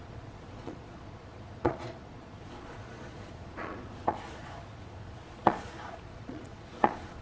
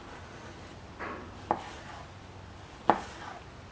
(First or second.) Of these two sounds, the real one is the second